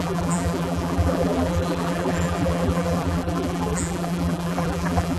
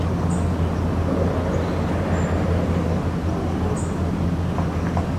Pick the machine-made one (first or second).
first